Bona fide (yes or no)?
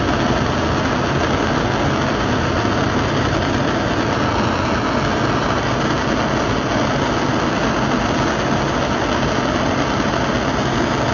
yes